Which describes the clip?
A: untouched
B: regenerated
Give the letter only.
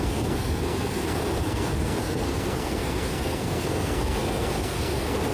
B